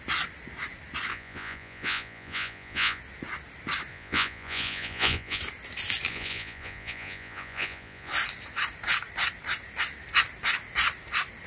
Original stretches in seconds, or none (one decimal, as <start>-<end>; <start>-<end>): 0.0-1.1; 3.0-3.9; 5.4-6.1; 8.1-11.5